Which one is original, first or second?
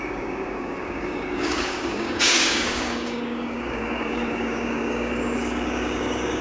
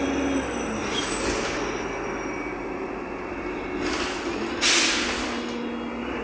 second